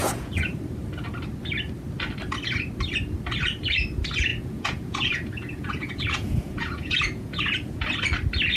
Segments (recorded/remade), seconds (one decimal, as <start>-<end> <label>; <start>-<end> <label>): 0.0-0.5 remade; 0.5-4.3 recorded; 4.3-7.8 remade; 7.8-8.6 recorded